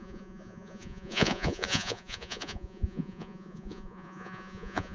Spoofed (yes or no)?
yes